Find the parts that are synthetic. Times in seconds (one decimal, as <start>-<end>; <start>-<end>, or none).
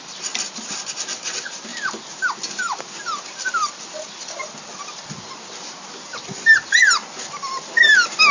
none